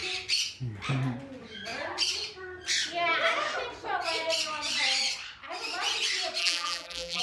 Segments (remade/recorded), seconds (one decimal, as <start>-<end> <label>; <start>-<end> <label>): 0.0-6.4 recorded; 6.4-7.2 remade